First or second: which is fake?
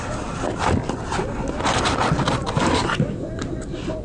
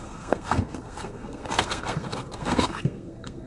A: second